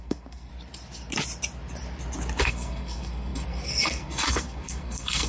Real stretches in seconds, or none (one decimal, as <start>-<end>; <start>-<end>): 0.5-2.4